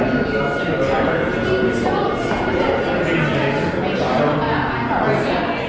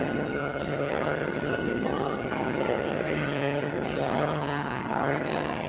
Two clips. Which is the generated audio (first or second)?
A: second